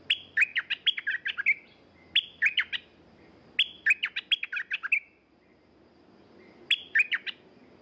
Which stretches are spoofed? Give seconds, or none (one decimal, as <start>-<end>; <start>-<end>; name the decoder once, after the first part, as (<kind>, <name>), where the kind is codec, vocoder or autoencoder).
none